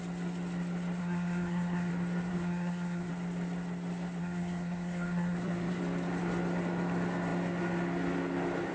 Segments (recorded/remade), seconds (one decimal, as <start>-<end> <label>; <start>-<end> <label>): 0.0-1.0 recorded; 1.0-1.9 remade; 1.9-2.3 recorded; 2.3-3.1 remade; 3.1-4.2 recorded; 4.2-5.8 remade; 5.8-8.7 recorded

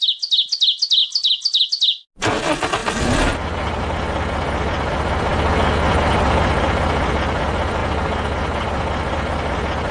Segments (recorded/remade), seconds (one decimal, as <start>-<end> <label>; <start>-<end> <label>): 0.0-1.0 recorded; 1.0-1.7 remade; 1.7-2.8 recorded; 2.8-3.8 remade; 3.8-9.9 recorded

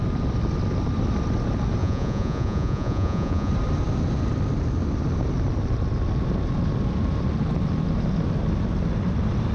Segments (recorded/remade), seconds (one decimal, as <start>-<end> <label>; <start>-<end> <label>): 0.0-1.8 recorded; 1.8-3.5 remade; 3.5-9.5 recorded

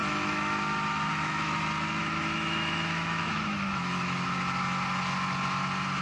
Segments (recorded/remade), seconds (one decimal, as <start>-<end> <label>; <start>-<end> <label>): 0.0-1.6 remade; 1.6-2.0 recorded; 2.0-4.4 remade; 4.4-6.0 recorded

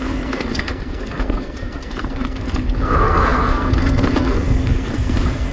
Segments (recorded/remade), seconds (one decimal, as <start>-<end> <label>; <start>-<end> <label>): 0.0-5.5 remade

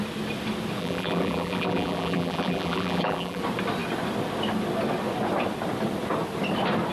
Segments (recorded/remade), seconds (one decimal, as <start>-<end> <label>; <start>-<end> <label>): 0.0-0.8 recorded; 0.8-3.4 remade; 3.4-6.9 recorded

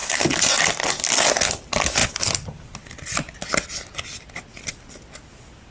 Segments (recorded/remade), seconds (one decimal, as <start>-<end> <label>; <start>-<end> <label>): 0.0-5.7 recorded